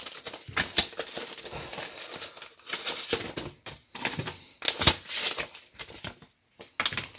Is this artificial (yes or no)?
no